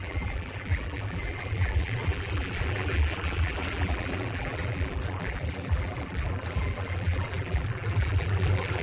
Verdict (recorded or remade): remade